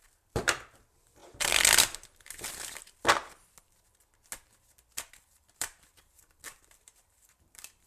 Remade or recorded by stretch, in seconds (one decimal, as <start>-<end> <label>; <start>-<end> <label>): 0.0-1.2 remade; 1.2-5.1 recorded; 5.1-7.9 remade